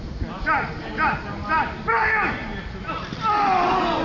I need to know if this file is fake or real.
real